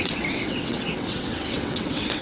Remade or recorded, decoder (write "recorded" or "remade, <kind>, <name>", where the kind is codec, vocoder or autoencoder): remade, vocoder, WaveNeXt